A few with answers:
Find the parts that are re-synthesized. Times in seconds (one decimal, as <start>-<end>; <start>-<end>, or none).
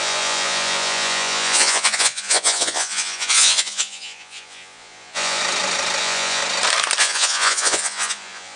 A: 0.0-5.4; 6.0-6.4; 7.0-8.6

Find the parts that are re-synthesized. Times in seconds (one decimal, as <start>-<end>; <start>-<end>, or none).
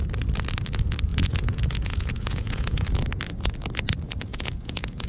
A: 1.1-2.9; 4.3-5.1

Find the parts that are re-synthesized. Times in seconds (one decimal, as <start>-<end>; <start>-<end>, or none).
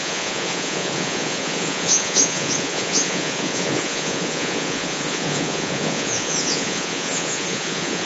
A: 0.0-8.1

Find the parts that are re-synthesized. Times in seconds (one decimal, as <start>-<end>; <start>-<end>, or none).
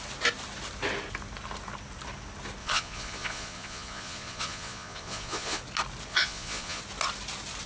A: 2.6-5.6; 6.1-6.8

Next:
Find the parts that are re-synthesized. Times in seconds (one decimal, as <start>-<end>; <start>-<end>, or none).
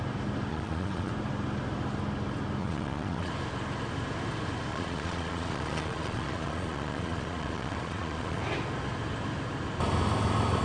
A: 0.5-1.1; 2.6-3.3; 4.7-8.4